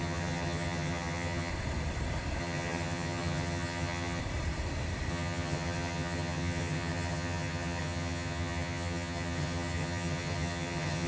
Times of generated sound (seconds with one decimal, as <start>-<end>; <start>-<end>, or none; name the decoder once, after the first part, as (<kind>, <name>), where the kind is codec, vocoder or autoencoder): 0.0-1.5 (vocoder, HiFi-GAN); 2.4-4.2; 5.1-11.1